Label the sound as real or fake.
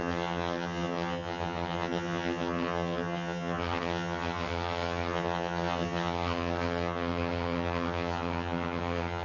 fake